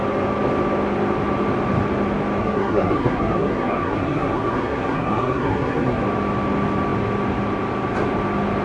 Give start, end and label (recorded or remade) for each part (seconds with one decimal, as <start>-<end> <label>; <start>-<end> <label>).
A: 0.0-2.4 recorded; 2.4-6.0 remade; 6.0-8.6 recorded